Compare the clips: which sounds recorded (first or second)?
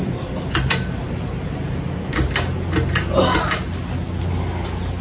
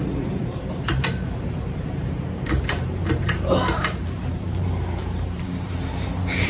first